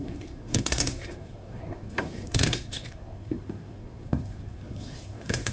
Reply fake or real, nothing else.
fake